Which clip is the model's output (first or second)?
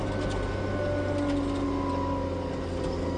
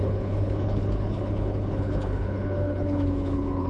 second